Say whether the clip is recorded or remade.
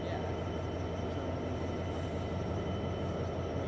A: recorded